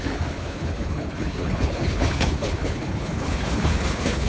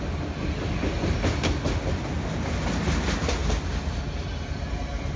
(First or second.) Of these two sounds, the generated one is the first